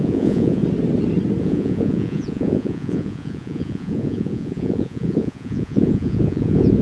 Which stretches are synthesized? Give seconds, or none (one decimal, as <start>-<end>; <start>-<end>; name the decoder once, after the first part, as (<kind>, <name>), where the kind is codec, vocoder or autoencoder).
0.0-0.6 (vocoder, Vocos); 1.4-6.8